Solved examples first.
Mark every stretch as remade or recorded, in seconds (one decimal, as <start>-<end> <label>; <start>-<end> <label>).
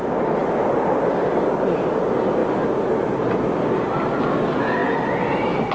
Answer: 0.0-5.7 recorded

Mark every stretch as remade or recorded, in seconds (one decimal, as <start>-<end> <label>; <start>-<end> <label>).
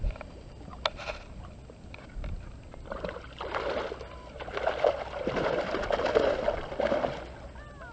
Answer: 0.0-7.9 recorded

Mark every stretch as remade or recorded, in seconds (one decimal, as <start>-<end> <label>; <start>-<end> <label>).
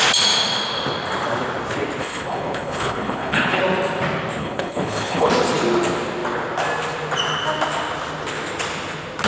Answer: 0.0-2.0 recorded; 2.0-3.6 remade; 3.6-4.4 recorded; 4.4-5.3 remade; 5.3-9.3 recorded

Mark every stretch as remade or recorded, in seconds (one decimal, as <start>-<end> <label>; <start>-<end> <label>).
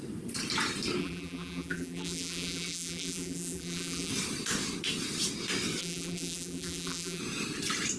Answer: 0.0-1.0 recorded; 1.0-4.1 remade; 4.1-5.8 recorded; 5.8-7.2 remade; 7.2-8.0 recorded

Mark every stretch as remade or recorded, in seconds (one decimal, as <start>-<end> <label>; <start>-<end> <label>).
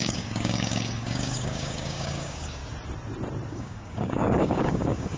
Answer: 0.0-2.6 remade; 2.6-3.5 recorded; 3.5-5.2 remade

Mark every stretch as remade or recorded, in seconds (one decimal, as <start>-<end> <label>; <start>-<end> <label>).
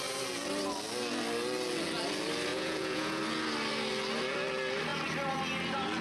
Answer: 0.0-2.5 recorded; 2.5-3.2 remade; 3.2-6.0 recorded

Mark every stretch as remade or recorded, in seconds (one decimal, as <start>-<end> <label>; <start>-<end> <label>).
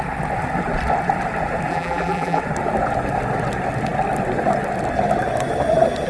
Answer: 0.0-1.7 recorded; 1.7-2.4 remade; 2.4-6.1 recorded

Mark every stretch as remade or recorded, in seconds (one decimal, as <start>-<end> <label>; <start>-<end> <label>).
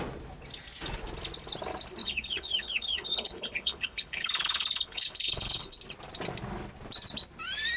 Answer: 0.0-2.0 recorded; 2.0-5.8 remade; 5.8-7.8 recorded